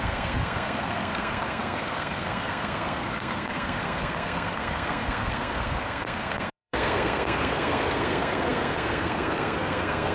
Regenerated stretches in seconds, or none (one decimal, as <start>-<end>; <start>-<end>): 0.0-10.1